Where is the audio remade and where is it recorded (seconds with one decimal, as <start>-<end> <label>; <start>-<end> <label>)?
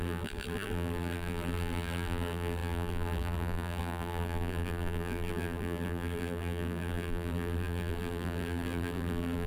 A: 0.0-9.5 remade